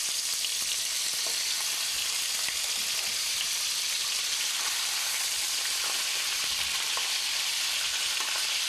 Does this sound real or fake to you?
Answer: fake